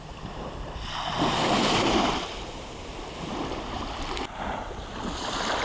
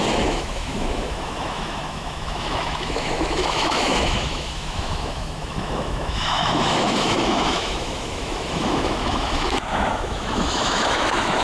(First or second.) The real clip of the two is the first